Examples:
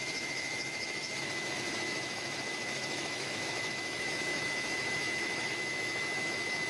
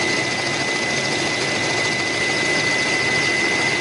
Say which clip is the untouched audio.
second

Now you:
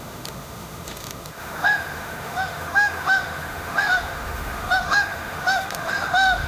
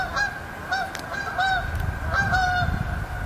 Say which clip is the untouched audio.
second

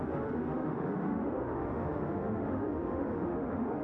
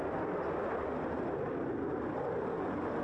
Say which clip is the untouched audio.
second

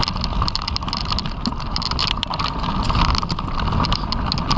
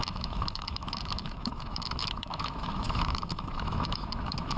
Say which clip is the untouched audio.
first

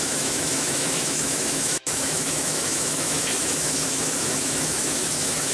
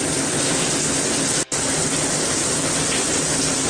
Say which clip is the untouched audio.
second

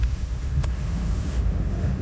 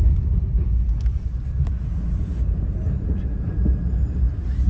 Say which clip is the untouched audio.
second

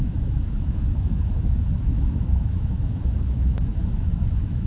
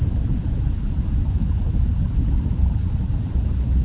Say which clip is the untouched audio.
second